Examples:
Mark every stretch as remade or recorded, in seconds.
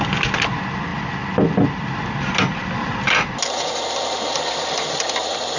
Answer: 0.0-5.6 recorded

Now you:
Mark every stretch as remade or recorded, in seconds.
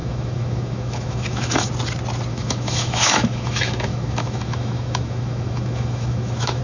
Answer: 0.0-1.7 remade; 1.7-2.3 recorded; 2.3-6.6 remade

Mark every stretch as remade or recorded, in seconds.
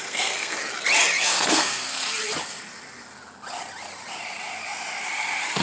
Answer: 0.0-0.6 remade; 0.6-1.2 recorded; 1.2-2.0 remade; 2.0-5.6 recorded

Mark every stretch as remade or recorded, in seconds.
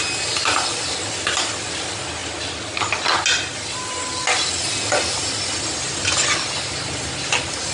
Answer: 0.0-7.7 recorded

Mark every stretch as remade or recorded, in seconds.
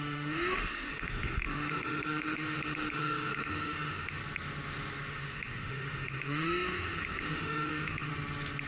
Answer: 0.0-4.2 remade; 4.2-5.1 recorded; 5.1-8.1 remade; 8.1-8.7 recorded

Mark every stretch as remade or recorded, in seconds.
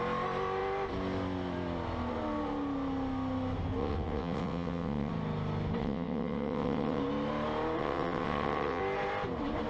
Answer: 0.0-3.8 recorded; 3.8-5.1 remade; 5.1-5.8 recorded; 5.8-7.0 remade; 7.0-7.8 recorded; 7.8-8.8 remade; 8.8-9.7 recorded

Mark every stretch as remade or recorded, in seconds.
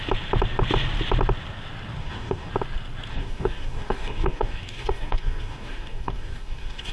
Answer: 0.0-2.0 recorded; 2.0-2.5 remade; 2.5-3.1 recorded; 3.1-6.9 remade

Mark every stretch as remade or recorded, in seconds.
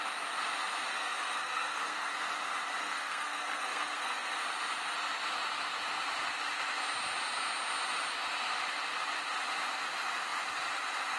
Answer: 0.0-0.9 recorded; 0.9-2.1 remade; 2.1-2.8 recorded; 2.8-4.4 remade; 4.4-11.2 recorded